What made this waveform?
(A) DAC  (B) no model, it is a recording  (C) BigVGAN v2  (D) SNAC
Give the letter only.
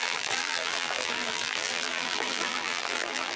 C